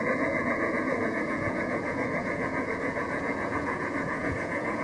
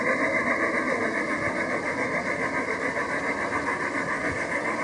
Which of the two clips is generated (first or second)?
first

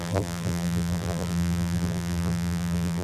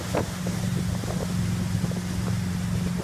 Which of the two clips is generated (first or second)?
first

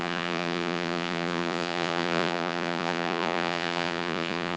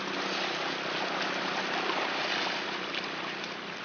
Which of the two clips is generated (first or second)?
first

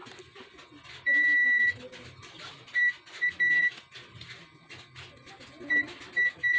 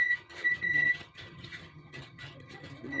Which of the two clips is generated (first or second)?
second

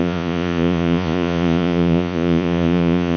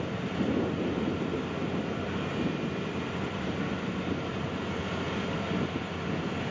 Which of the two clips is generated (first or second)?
first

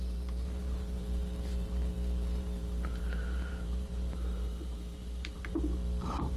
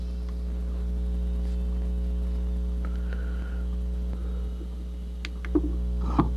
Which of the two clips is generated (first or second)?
first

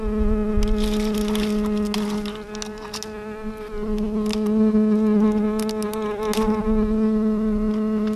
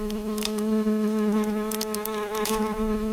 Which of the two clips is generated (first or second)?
second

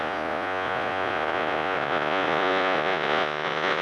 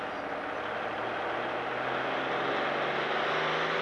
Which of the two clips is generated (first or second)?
first